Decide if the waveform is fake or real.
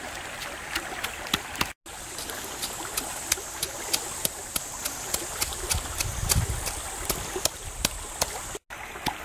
real